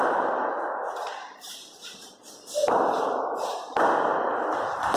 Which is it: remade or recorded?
remade